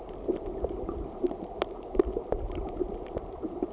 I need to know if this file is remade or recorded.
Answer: recorded